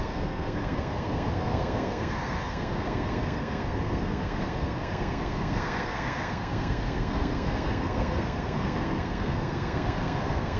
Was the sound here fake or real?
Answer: fake